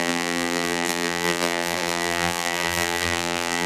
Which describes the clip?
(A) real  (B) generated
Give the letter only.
B